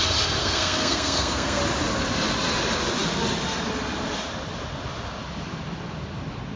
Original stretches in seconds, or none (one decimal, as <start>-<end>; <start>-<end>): 0.0-0.4; 1.6-6.6